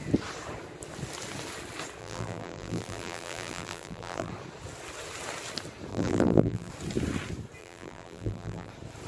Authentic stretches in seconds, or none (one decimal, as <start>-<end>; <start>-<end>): 0.0-2.0; 4.3-5.9; 6.7-7.6; 8.7-9.1